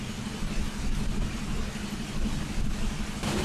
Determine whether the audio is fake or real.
real